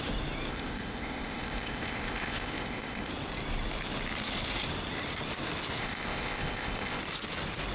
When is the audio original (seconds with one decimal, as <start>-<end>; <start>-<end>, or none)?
0.0-0.5; 3.1-5.8; 7.0-7.7